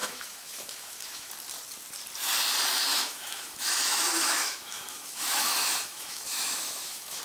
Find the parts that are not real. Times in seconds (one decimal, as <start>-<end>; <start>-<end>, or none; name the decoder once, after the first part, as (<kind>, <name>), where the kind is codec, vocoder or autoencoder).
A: 0.0-1.3 (autoencoder, DAC-VAE); 2.9-7.2